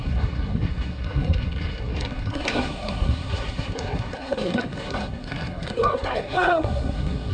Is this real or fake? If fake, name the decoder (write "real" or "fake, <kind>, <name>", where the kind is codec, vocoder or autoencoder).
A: fake, codec, SNAC